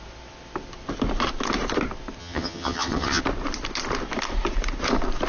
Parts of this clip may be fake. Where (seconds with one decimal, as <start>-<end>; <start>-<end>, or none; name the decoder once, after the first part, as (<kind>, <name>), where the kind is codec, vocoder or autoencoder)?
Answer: 2.2-3.2 (vocoder, HiFi-GAN)